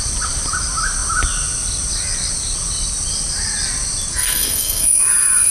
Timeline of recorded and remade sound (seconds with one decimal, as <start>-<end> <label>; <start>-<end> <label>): 0.0-4.1 recorded; 4.1-5.0 remade; 5.0-5.5 recorded